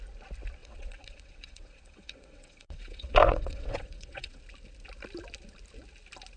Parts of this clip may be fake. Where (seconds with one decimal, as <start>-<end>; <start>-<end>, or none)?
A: 0.6-4.4